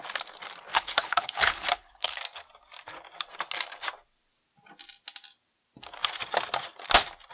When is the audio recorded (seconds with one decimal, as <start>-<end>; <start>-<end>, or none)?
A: 0.0-0.7; 2.2-7.3